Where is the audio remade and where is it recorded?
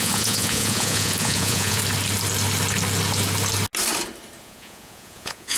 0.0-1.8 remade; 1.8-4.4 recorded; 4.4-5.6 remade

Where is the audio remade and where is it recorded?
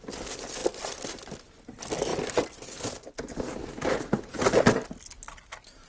0.0-5.9 recorded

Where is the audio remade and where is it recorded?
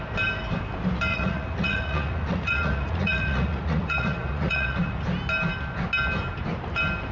0.0-1.1 recorded; 1.1-5.0 remade; 5.0-7.1 recorded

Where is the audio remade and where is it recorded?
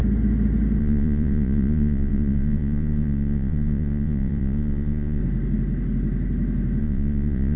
0.0-0.8 recorded; 0.8-5.2 remade; 5.2-6.8 recorded; 6.8-7.6 remade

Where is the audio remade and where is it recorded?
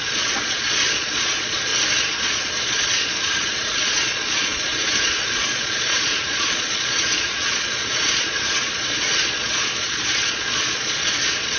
0.0-1.7 remade; 1.7-2.2 recorded; 2.2-11.6 remade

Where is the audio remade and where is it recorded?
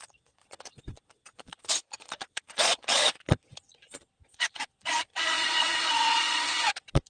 0.0-7.1 remade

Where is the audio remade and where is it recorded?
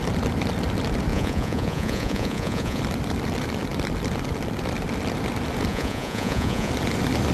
0.0-1.1 recorded; 1.1-2.8 remade; 2.8-5.7 recorded; 5.7-6.7 remade; 6.7-7.3 recorded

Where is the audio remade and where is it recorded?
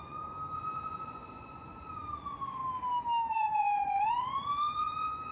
0.0-2.6 remade; 2.6-3.3 recorded; 3.3-5.3 remade